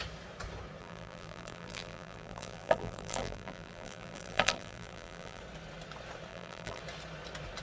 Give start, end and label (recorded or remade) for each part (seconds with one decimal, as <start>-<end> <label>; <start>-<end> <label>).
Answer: 0.0-0.8 recorded; 0.8-5.4 remade; 5.4-6.3 recorded; 6.3-6.8 remade; 6.8-7.6 recorded